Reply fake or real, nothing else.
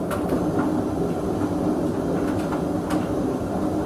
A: real